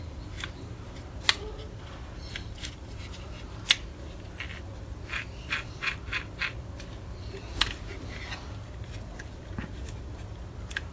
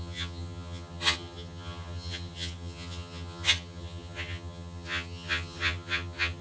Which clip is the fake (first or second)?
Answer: second